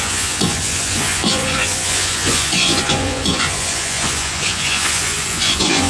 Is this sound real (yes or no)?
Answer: no